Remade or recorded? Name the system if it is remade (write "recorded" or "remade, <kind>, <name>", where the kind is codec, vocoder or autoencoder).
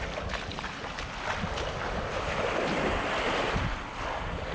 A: recorded